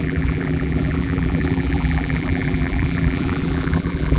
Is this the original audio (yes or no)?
no